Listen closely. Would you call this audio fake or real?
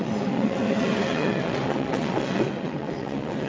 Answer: fake